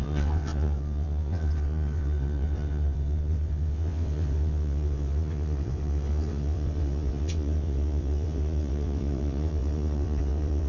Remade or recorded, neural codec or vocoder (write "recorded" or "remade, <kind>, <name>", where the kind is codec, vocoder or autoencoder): remade, vocoder, WaveNeXt